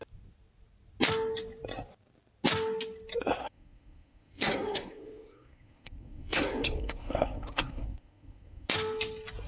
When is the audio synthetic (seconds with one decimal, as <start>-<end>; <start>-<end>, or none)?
3.4-8.7